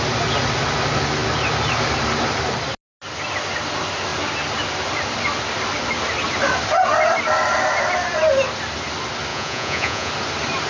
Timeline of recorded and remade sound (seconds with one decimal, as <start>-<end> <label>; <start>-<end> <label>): 0.0-9.3 recorded; 9.3-10.1 remade; 10.1-10.7 recorded